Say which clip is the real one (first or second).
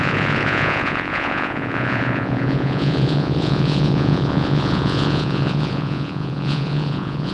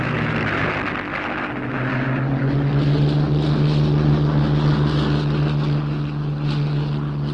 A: second